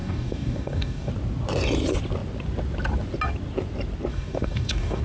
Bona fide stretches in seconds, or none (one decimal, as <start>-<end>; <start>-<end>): 1.1-4.1